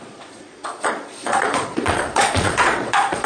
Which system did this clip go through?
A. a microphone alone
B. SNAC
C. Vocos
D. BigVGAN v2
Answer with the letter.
C